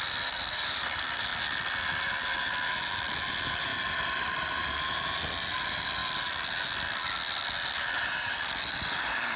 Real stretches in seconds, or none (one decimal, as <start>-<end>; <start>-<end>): 1.3-3.3; 6.0-8.8